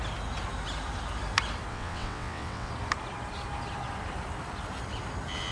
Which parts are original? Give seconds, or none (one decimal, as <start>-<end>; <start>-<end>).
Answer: 0.0-1.7; 2.7-5.5